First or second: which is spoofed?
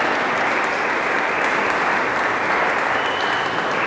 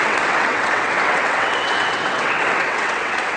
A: second